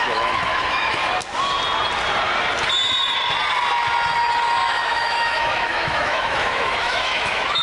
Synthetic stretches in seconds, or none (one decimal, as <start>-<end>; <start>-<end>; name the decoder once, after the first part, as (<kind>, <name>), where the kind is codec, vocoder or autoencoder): 0.0-1.0 (autoencoder, DAC-VAE); 4.7-7.6